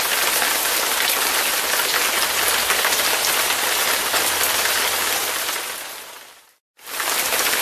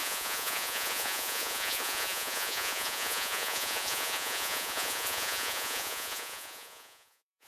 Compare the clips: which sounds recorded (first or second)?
first